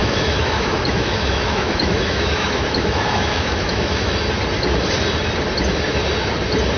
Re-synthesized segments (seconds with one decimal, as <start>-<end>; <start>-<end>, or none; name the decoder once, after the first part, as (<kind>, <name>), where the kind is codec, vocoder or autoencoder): 0.0-4.1 (autoencoder, DAC-VAE)